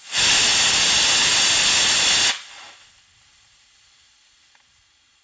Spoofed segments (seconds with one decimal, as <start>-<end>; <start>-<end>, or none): none